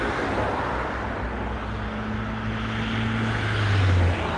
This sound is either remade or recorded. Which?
recorded